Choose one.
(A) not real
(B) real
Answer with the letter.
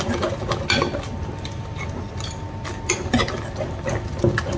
B